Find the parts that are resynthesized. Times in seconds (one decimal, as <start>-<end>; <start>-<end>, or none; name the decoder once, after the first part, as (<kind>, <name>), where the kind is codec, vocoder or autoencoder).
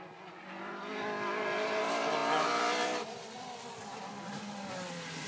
none